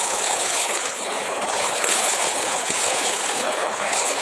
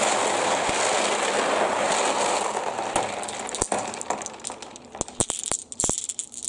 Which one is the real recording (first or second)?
second